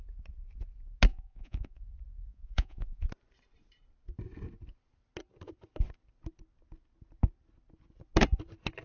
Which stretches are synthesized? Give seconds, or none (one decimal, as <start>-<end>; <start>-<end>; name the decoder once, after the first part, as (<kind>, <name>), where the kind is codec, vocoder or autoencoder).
1.1-1.8 (vocoder, Vocos); 2.3-3.1